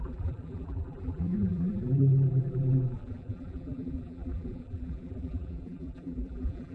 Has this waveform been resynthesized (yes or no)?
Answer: yes